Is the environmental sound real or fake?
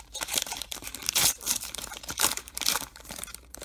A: fake